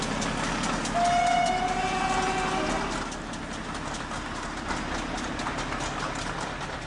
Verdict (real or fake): real